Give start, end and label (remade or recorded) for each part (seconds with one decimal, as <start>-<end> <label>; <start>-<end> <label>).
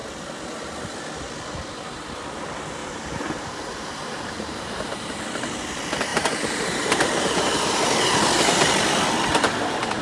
0.0-2.8 recorded; 2.8-5.2 remade; 5.2-6.1 recorded; 6.1-8.7 remade; 8.7-10.0 recorded